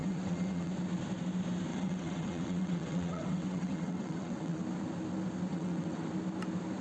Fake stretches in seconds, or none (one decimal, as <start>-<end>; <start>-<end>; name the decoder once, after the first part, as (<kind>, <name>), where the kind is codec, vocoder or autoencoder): 0.0-0.7 (vocoder, WaveNeXt); 1.7-4.6; 5.5-6.1